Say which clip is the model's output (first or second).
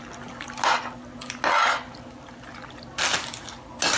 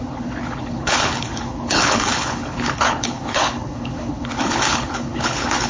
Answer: second